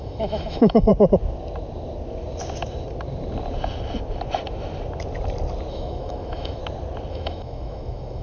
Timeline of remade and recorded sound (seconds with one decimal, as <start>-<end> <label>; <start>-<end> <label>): 0.0-0.9 remade; 0.9-5.7 recorded; 5.7-6.6 remade; 6.6-7.1 recorded; 7.1-8.2 remade